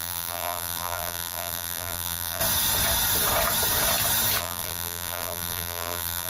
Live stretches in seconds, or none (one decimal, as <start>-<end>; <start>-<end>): 2.4-4.4

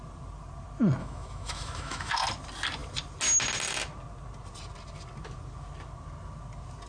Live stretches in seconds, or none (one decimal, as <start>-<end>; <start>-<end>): 0.0-1.0; 2.1-6.9

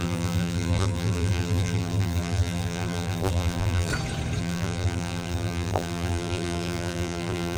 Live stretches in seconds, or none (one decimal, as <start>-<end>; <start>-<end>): 3.9-4.4

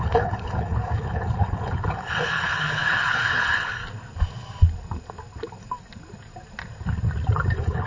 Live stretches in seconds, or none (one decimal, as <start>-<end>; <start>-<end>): 3.8-7.5